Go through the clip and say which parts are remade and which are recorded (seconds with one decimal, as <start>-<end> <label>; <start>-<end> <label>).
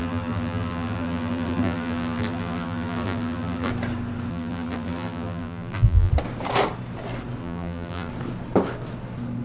0.0-3.7 remade; 3.7-4.3 recorded; 4.3-6.1 remade; 6.1-7.4 recorded; 7.4-8.1 remade; 8.1-9.4 recorded